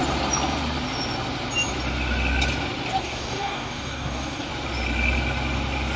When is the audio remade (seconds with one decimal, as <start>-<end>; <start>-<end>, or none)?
3.0-4.5